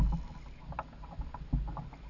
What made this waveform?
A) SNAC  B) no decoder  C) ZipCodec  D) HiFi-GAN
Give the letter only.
B